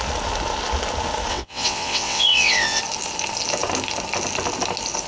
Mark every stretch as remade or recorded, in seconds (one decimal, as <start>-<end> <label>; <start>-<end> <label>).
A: 0.0-1.3 recorded; 1.3-2.8 remade; 2.8-5.1 recorded